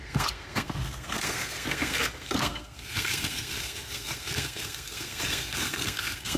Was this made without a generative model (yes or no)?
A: no